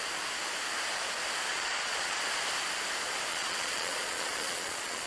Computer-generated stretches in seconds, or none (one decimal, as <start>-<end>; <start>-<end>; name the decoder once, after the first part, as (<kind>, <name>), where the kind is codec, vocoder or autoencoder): 1.5-2.2 (vocoder, Vocos); 3.3-5.1